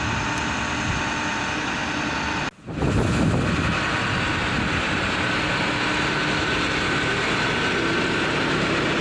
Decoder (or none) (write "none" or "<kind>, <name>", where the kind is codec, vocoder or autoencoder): none